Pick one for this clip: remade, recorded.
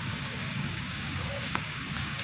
remade